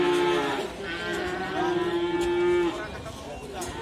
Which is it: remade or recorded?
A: recorded